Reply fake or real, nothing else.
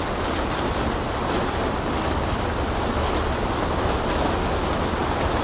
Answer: real